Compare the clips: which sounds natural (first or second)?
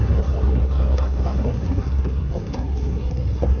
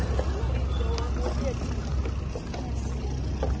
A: second